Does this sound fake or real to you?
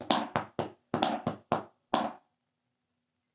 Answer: real